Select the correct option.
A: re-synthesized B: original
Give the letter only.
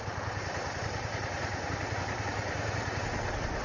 A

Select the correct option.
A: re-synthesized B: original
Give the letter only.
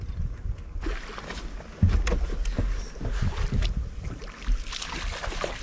B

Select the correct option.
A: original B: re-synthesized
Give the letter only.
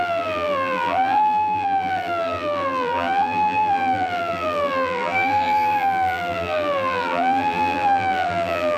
B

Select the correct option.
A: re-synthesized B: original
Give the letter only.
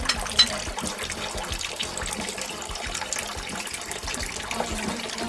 B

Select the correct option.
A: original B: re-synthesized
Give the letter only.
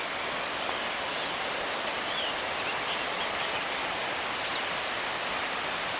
B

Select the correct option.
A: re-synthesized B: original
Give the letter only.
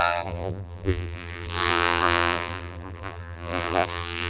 A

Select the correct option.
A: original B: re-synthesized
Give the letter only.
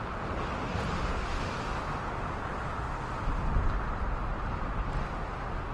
A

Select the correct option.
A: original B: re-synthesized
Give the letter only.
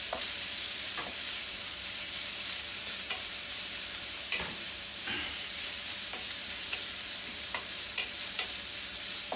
B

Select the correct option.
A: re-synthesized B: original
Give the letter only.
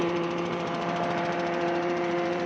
A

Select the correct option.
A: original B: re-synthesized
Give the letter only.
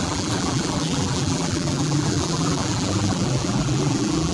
B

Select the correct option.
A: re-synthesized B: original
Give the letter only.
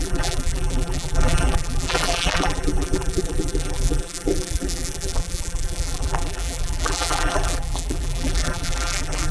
A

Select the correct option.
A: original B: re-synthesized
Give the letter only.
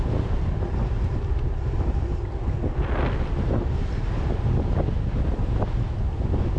A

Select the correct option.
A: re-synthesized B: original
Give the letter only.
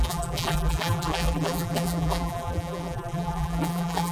A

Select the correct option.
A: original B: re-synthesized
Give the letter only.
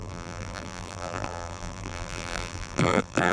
B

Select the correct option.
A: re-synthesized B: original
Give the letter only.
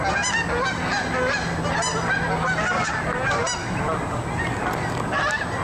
B